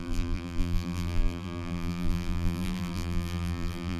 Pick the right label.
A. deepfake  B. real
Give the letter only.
A